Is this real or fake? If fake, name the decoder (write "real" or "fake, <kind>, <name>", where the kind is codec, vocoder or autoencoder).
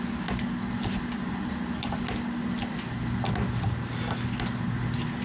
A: real